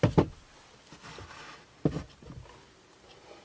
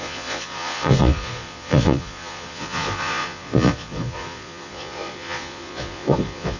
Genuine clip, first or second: first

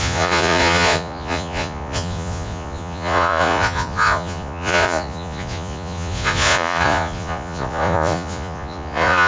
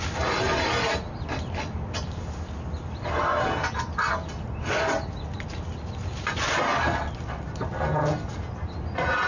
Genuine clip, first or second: second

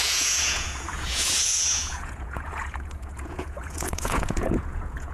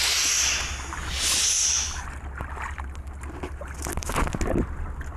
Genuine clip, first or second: second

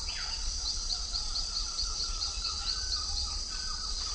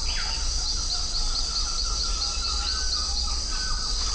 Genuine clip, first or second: second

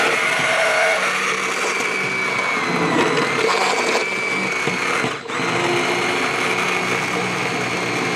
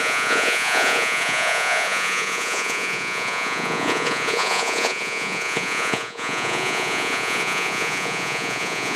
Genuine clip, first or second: first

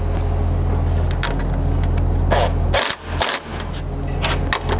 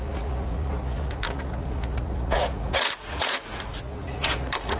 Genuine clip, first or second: first